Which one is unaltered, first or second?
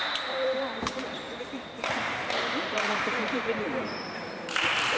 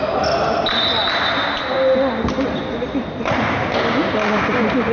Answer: second